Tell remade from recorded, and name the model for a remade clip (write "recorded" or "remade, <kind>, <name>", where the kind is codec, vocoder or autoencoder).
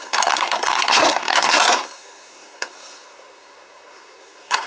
remade, codec, SNAC